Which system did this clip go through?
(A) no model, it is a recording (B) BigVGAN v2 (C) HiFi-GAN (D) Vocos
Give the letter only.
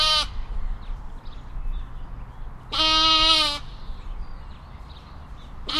A